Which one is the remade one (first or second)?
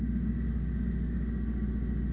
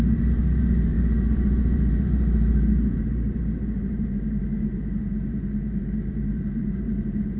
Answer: second